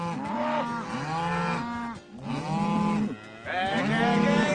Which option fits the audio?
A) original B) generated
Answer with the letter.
A